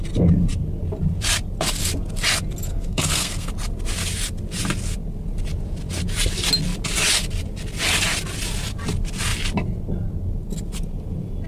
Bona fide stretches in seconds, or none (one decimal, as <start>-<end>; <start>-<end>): 0.0-2.7; 3.5-11.5